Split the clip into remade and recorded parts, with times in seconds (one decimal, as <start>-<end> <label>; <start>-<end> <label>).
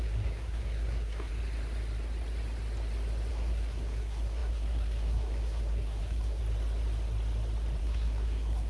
0.0-1.3 remade; 1.3-3.3 recorded; 3.3-6.4 remade; 6.4-7.8 recorded; 7.8-8.7 remade